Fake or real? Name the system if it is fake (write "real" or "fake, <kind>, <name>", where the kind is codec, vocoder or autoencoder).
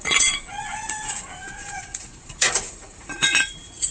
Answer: fake, vocoder, Vocos